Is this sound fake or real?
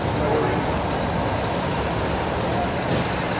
real